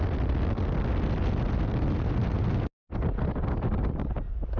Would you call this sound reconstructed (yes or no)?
no